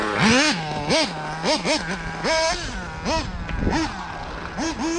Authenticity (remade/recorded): recorded